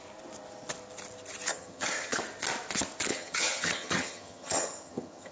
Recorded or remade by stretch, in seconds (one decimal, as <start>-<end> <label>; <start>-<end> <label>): 0.0-1.5 recorded; 1.5-2.2 remade; 2.2-3.1 recorded; 3.1-5.3 remade